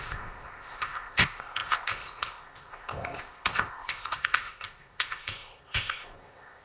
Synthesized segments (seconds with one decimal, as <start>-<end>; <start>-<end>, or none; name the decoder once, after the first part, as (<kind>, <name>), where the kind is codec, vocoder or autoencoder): 0.0-6.6 (codec, ZipCodec)